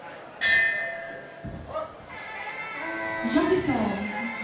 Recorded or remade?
recorded